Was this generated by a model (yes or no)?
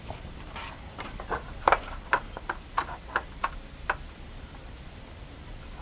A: yes